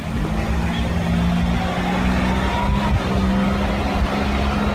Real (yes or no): yes